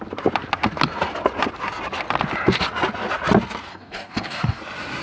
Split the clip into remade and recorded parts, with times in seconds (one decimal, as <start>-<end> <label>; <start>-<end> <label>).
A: 0.0-3.7 recorded; 3.7-4.6 remade; 4.6-5.0 recorded